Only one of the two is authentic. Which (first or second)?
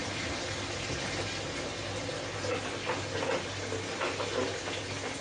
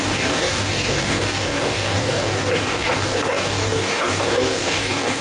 first